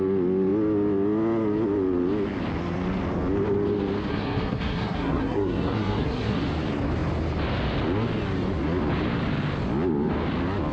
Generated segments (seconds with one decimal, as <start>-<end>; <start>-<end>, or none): 4.1-6.4